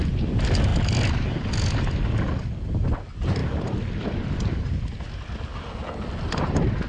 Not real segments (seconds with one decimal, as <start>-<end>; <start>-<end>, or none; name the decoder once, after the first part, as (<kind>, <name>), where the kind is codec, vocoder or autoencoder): 3.4-4.4 (vocoder, BigVGAN v2)